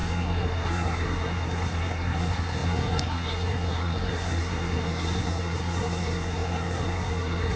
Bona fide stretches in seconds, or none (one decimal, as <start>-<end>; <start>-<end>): none